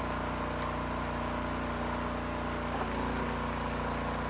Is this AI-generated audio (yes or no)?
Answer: no